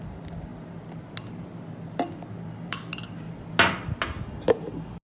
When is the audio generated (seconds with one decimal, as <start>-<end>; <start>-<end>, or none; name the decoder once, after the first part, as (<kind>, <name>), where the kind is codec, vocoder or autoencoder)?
none